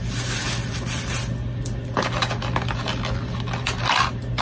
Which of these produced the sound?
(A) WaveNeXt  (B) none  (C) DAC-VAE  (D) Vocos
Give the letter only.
B